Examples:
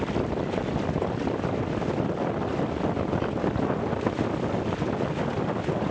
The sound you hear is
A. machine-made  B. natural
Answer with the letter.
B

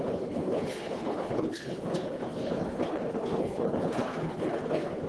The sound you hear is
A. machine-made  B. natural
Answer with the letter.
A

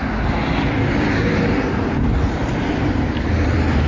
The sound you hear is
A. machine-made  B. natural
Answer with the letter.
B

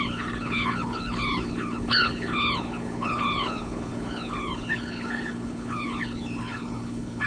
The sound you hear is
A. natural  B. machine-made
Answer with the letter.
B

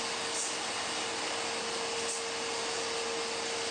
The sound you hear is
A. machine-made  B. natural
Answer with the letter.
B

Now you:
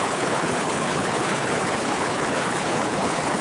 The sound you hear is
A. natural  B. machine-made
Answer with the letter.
B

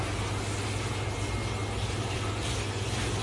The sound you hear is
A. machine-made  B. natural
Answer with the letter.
B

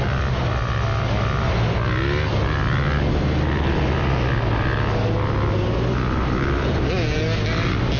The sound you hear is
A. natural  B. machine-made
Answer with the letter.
A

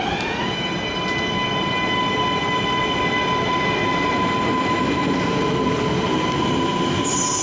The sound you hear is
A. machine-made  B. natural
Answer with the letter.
B